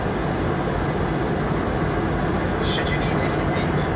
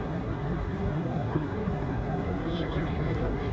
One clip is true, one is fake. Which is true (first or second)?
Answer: first